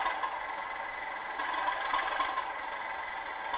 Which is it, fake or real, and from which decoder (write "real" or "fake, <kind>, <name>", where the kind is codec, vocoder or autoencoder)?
real